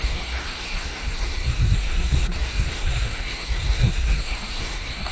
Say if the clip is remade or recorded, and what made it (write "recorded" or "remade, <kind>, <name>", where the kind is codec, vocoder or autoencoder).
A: remade, codec, SNAC